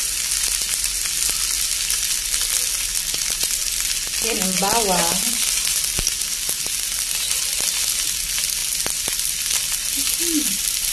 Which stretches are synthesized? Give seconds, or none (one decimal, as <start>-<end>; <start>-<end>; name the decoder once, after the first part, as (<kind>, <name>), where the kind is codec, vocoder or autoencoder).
none